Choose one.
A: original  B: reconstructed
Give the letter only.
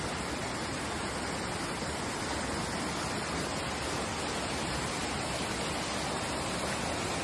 A